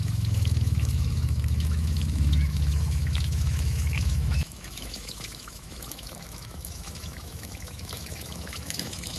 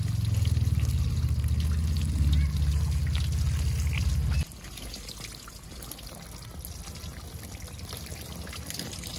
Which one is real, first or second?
second